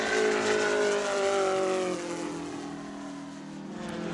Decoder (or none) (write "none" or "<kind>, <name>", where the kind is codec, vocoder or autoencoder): none